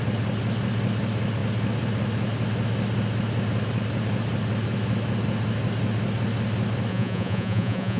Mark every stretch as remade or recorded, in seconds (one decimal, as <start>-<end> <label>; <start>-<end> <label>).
0.0-6.9 recorded; 6.9-8.0 remade